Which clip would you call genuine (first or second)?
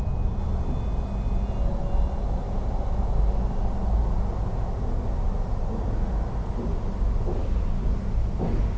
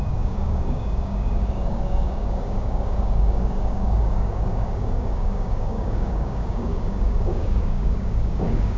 first